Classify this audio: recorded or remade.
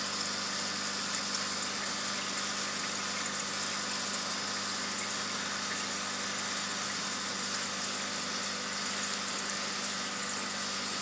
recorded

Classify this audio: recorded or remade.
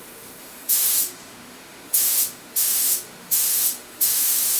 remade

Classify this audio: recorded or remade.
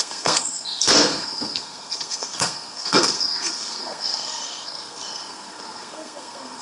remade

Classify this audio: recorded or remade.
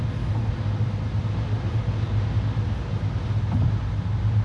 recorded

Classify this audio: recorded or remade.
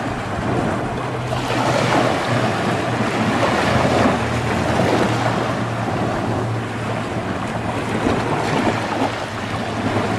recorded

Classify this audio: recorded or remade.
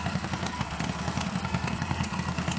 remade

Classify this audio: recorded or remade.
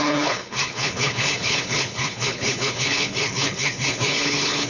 remade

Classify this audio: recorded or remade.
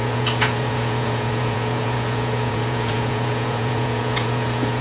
remade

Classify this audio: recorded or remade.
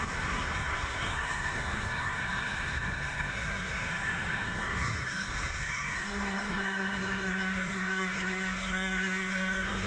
remade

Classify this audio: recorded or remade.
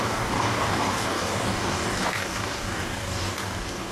remade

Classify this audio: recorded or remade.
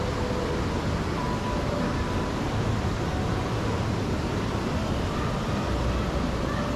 recorded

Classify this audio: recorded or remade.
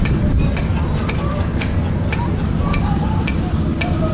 recorded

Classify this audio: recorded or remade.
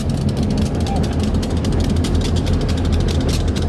recorded